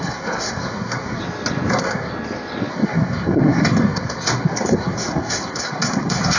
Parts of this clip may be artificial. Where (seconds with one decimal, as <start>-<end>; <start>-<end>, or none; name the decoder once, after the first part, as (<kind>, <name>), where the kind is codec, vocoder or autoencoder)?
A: 0.0-1.2 (codec, SNAC); 1.7-2.1; 2.7-6.4